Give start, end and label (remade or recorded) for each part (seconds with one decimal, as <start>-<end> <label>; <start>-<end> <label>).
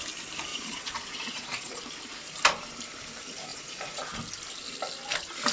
0.0-0.5 recorded; 0.5-1.8 remade; 1.8-3.5 recorded; 3.5-4.1 remade; 4.1-5.5 recorded